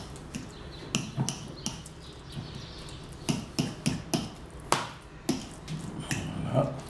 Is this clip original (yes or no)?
yes